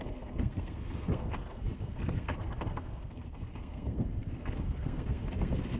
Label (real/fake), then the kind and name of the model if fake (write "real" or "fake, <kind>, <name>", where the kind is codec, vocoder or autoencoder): fake, codec, SNAC